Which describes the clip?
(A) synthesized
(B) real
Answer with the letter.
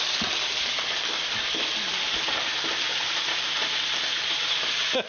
B